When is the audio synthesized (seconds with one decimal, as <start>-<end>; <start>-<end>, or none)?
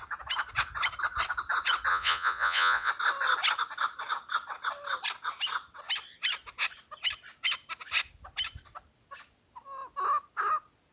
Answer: 1.9-2.9